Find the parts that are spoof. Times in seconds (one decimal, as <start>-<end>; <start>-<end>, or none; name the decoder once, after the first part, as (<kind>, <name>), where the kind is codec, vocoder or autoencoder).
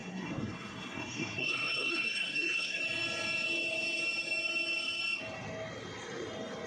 0.0-2.8 (codec, SNAC)